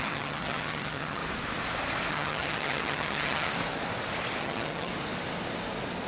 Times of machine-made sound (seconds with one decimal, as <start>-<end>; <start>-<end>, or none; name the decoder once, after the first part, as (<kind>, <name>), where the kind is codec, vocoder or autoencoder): 0.0-1.2 (vocoder, HiFi-GAN); 2.1-3.5; 4.4-4.9